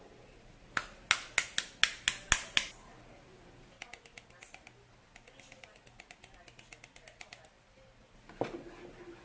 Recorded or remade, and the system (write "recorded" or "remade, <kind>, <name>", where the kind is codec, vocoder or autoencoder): recorded